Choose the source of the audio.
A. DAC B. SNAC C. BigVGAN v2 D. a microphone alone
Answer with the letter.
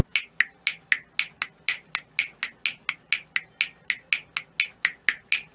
D